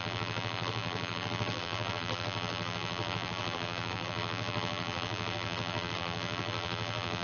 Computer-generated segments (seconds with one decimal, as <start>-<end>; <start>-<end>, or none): 0.0-7.2